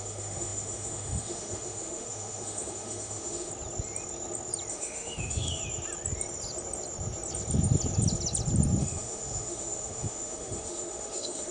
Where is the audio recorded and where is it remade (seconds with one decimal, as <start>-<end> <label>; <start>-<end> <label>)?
0.0-3.5 remade; 3.5-4.7 recorded; 4.7-5.6 remade; 5.6-8.8 recorded; 8.8-11.5 remade